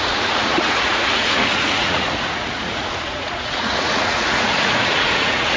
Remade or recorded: remade